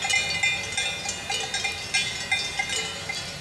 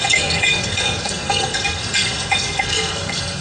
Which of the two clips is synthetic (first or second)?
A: second